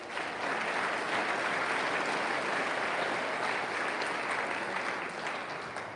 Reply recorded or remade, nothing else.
recorded